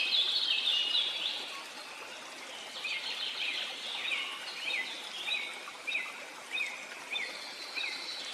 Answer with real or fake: real